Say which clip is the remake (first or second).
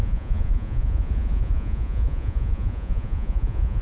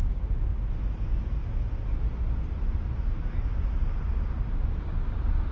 first